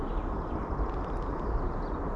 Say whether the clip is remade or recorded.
recorded